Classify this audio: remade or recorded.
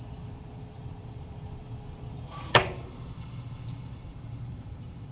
remade